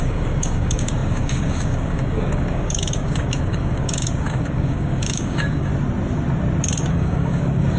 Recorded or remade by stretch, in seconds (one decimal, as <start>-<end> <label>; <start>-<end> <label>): 0.0-5.7 remade; 5.7-6.9 recorded; 6.9-7.8 remade